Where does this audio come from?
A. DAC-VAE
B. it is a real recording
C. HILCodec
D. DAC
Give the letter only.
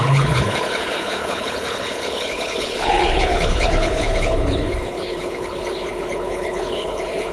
C